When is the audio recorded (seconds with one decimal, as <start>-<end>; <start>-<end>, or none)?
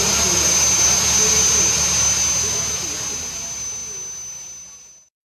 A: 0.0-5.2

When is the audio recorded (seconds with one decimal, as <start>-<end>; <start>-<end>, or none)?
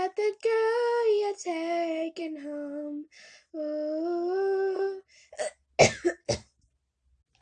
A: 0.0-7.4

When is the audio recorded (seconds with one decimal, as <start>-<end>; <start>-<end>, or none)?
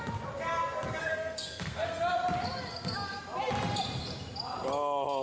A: 0.0-1.0; 2.0-2.7; 3.2-5.2